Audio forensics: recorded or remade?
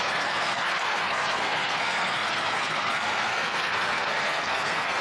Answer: remade